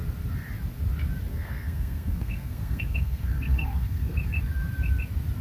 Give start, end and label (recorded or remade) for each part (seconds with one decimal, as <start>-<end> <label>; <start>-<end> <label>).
0.0-1.3 recorded; 1.3-4.5 remade; 4.5-5.4 recorded